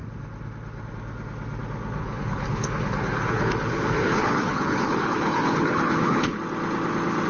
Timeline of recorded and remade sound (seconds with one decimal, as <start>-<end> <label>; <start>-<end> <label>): 0.0-2.0 recorded; 2.0-6.4 remade; 6.4-7.3 recorded